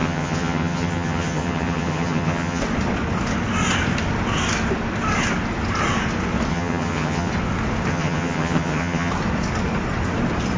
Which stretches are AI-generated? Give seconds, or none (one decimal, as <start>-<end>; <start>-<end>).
0.0-2.6; 6.5-7.3; 7.9-9.1